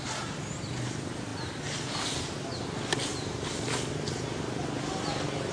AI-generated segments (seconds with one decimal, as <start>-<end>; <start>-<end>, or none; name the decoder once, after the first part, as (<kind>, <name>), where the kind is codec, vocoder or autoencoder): none